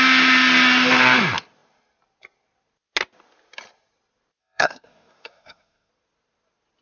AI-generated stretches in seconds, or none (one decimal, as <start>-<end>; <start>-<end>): 4.4-5.9